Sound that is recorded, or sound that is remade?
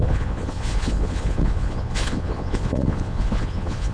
remade